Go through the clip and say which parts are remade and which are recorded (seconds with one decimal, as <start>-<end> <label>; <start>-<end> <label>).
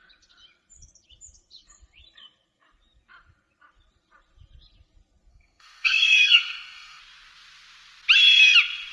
0.0-5.3 recorded; 5.3-7.0 remade; 7.0-8.9 recorded